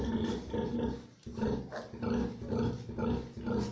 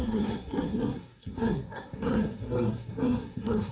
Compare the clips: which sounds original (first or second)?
first